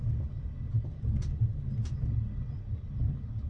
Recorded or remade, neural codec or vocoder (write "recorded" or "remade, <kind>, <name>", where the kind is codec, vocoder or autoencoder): recorded